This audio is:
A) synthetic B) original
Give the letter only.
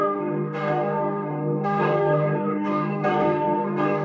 A